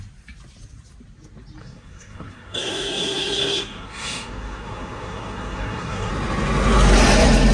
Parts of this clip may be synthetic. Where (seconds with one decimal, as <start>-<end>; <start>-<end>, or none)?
1.6-6.1